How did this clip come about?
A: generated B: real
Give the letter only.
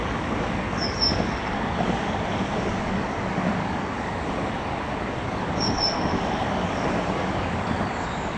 A